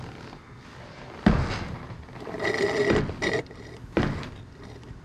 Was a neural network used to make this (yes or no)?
no